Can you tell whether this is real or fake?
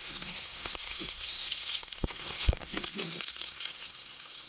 fake